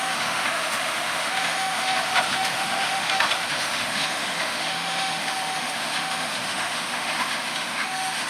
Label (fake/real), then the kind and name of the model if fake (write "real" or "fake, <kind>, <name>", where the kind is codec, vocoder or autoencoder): fake, autoencoder, DAC-VAE